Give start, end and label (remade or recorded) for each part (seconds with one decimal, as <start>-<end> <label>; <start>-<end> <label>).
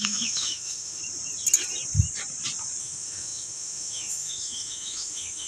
0.0-1.0 remade; 1.0-2.8 recorded; 2.8-5.5 remade